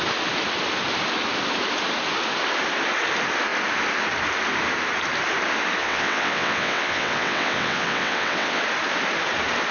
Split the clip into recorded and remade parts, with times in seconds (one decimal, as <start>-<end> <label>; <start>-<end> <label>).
0.0-5.8 recorded; 5.8-8.6 remade; 8.6-9.7 recorded